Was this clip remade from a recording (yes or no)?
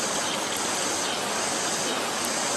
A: no